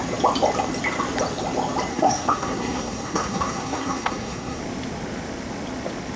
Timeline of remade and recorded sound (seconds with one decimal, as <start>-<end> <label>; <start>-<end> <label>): 0.0-1.9 recorded; 1.9-4.6 remade; 4.6-6.2 recorded